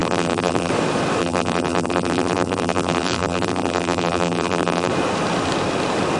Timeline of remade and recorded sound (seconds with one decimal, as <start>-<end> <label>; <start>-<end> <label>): 0.0-0.7 remade; 0.7-1.2 recorded; 1.2-4.9 remade; 4.9-6.2 recorded